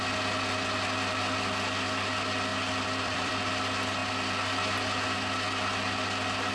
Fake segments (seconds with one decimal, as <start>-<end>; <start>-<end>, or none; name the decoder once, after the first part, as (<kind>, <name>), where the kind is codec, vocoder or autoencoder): 2.5-3.4 (vocoder, BigVGAN v2)